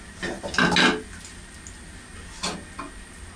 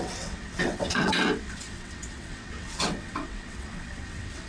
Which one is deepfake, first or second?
second